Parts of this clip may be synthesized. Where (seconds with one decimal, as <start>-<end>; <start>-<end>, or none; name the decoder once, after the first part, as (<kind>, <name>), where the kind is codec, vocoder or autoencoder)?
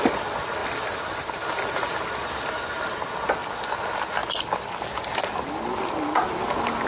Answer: none